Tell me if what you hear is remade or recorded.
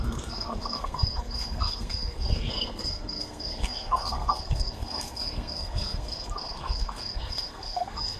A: remade